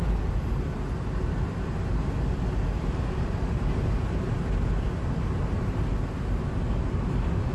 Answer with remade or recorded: recorded